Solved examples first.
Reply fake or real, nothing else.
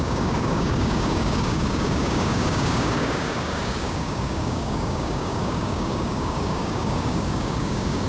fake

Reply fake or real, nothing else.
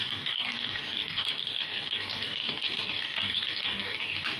fake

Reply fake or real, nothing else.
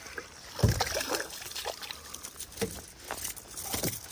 real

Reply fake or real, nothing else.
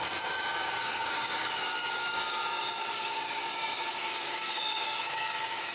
fake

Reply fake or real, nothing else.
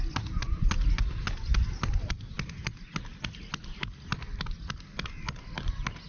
real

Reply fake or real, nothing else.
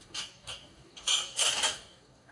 fake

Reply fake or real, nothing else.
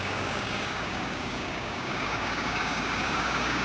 fake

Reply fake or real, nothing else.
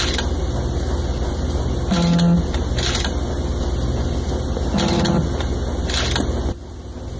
real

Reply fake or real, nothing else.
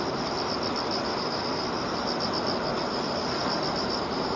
real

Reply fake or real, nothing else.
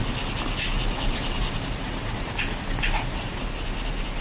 real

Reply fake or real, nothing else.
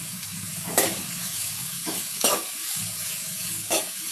fake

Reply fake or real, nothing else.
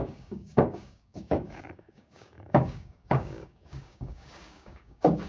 fake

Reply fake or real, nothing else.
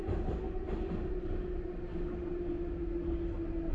real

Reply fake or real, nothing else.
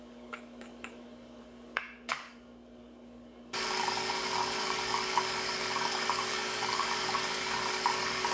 fake